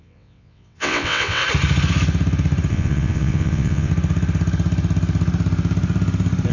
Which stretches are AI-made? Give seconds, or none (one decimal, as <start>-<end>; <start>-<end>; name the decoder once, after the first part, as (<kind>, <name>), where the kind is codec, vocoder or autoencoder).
0.0-1.4 (vocoder, WaveNeXt); 2.7-3.9